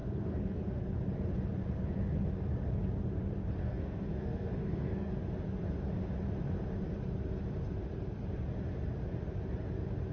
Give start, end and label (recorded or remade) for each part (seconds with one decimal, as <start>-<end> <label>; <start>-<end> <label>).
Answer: 0.0-0.8 remade; 0.8-3.6 recorded; 3.6-5.1 remade; 5.1-10.1 recorded